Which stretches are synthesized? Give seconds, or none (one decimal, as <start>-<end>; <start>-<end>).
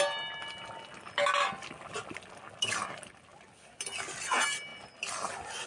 none